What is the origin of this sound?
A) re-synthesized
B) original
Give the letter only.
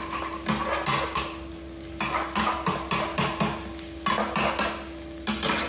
B